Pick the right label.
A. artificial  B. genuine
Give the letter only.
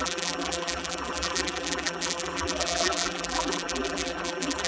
A